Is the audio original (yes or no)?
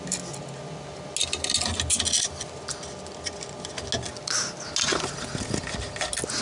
yes